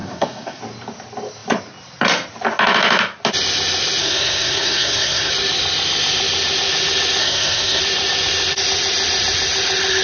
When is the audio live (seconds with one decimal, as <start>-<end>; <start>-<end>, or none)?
0.6-4.0; 5.3-7.2; 7.8-10.0